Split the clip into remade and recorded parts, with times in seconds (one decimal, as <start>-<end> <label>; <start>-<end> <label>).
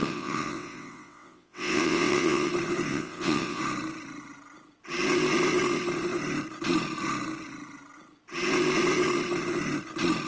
0.0-2.5 remade; 2.5-2.9 recorded; 2.9-3.6 remade; 3.6-10.3 recorded